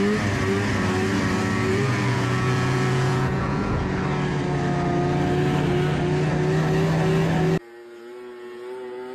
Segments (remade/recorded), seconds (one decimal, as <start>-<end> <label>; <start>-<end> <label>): 0.0-1.7 recorded; 1.7-4.0 remade; 4.0-9.1 recorded